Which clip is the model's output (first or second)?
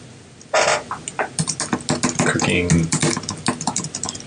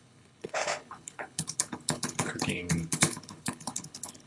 second